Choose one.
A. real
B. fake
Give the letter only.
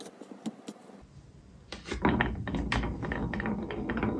A